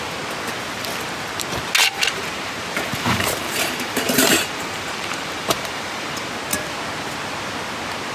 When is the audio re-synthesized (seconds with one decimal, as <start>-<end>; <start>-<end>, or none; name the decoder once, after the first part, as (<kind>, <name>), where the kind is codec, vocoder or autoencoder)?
1.8-6.3 (vocoder, BigVGAN v2)